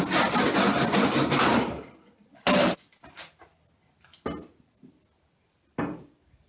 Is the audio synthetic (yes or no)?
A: no